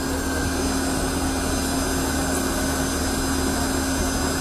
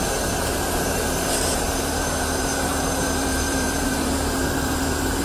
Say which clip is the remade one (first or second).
second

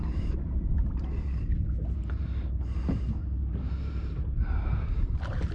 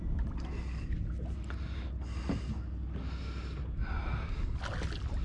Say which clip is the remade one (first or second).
first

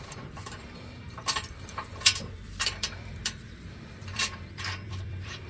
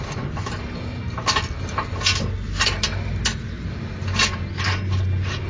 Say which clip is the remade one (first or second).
first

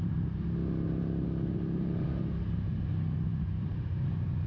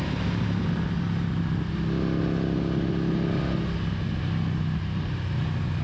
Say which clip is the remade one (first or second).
first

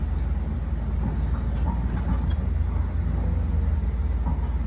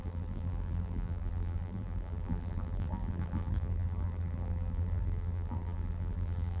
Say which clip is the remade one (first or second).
second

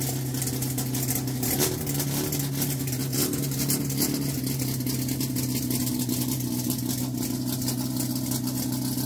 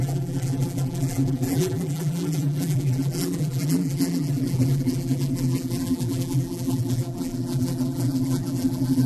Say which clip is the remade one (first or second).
second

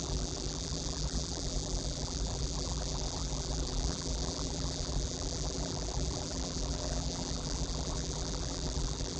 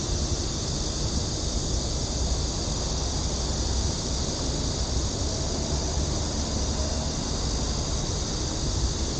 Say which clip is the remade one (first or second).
first